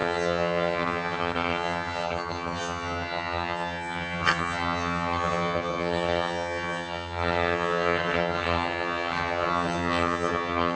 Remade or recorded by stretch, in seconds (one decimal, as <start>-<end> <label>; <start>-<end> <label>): 0.0-10.8 remade